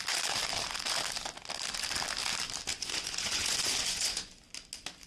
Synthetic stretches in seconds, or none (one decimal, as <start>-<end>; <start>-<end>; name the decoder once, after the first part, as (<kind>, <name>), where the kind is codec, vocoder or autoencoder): 2.7-4.3 (vocoder, Vocos)